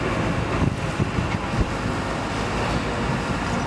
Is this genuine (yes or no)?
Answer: yes